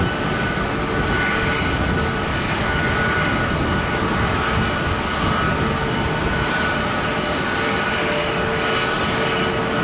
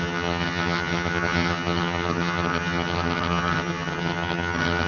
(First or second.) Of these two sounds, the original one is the first